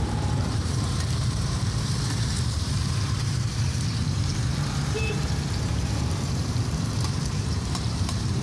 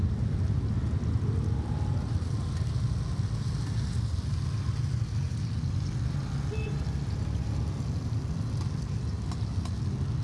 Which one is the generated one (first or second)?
first